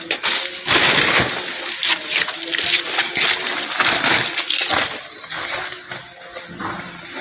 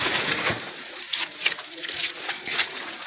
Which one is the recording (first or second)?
first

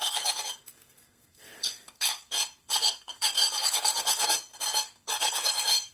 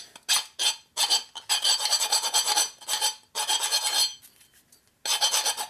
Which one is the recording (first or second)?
second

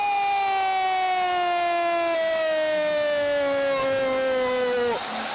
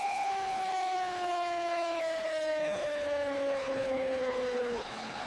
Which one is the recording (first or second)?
first